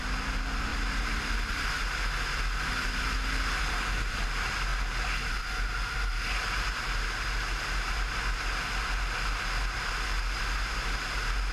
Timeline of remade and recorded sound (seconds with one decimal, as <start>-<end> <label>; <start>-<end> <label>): 0.0-0.7 recorded; 0.7-1.5 remade; 1.5-11.5 recorded